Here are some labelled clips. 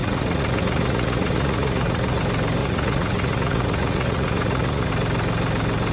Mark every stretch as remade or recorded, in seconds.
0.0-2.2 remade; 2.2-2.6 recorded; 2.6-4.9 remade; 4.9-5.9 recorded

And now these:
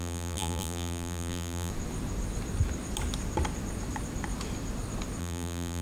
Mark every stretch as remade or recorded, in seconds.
0.0-1.7 remade; 1.7-5.2 recorded; 5.2-5.8 remade

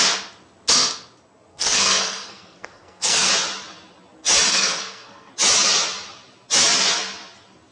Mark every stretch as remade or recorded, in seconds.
0.0-1.5 recorded; 1.5-3.3 remade; 3.3-4.5 recorded; 4.5-5.3 remade; 5.3-7.7 recorded

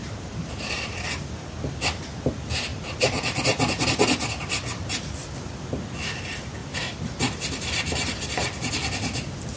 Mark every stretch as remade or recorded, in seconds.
0.0-1.3 remade; 1.3-2.7 recorded; 2.7-3.7 remade; 3.7-6.6 recorded; 6.6-8.7 remade; 8.7-9.6 recorded